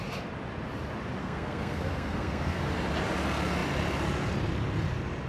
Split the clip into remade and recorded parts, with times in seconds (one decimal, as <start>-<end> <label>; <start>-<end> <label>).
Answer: 0.0-1.2 recorded; 1.2-2.6 remade; 2.6-5.3 recorded